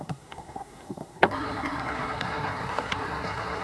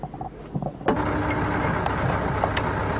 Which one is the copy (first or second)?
first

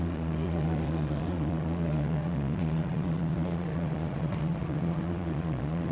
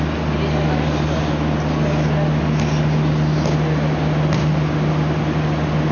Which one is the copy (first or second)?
first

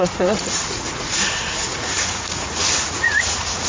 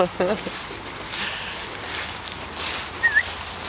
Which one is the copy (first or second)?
first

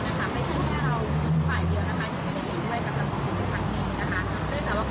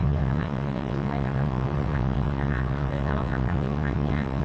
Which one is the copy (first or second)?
second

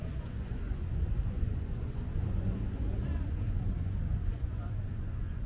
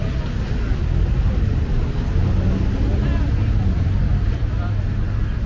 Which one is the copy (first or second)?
first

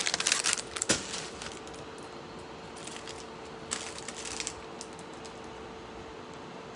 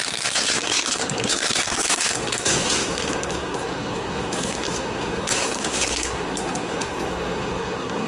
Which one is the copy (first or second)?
second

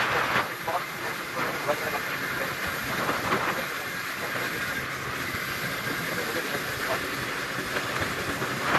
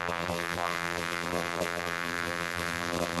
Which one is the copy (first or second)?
second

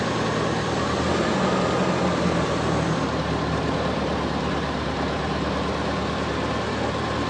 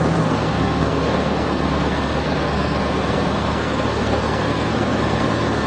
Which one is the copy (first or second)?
second